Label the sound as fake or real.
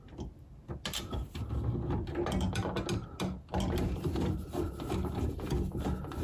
real